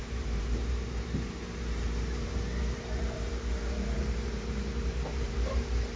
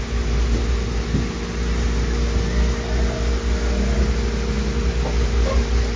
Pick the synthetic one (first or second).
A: first